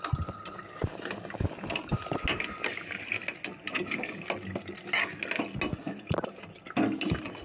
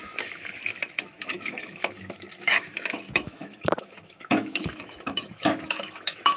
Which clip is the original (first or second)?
first